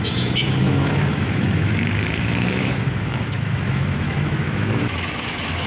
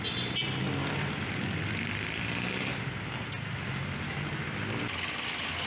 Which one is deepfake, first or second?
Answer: first